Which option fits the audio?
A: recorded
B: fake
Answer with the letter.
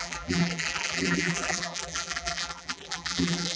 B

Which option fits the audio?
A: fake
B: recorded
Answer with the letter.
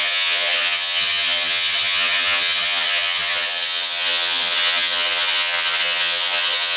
A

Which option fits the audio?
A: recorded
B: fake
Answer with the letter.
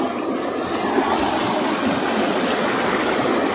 A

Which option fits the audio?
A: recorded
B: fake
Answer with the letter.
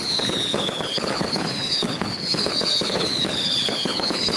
B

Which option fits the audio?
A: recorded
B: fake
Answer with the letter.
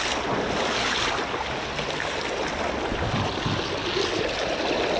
A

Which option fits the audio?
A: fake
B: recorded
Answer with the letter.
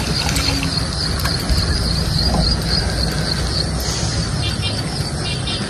B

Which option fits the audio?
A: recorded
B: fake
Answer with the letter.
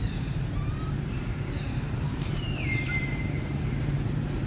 B